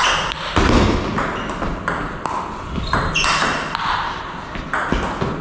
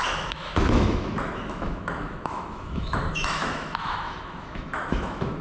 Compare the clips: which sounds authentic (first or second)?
first